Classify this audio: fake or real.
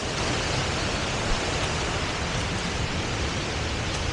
real